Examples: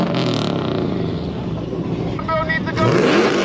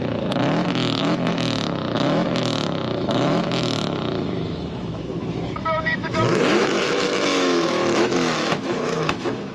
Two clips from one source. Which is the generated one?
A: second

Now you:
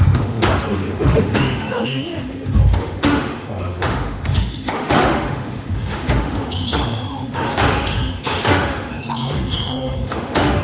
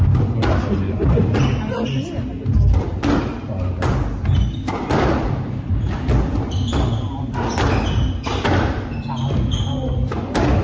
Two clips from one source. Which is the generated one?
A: first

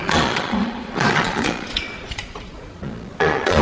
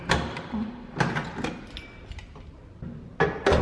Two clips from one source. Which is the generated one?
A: first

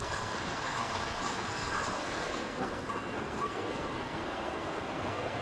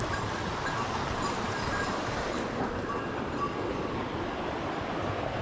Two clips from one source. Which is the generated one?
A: first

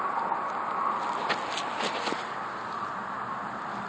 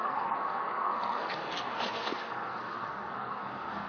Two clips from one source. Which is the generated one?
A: second